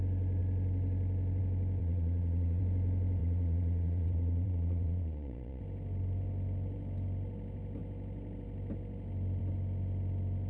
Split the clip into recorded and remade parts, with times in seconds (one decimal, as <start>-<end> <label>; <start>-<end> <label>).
0.0-1.8 recorded; 1.8-2.6 remade; 2.6-3.2 recorded; 3.2-5.6 remade; 5.6-10.5 recorded